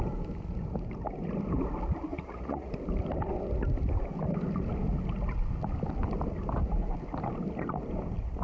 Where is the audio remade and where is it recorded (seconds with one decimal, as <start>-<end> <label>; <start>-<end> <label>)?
0.0-2.1 recorded; 2.1-2.7 remade; 2.7-8.4 recorded